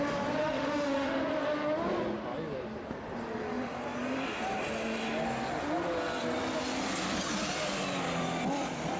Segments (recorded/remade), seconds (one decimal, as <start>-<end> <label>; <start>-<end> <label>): 0.0-0.4 recorded; 0.4-1.2 remade; 1.2-9.0 recorded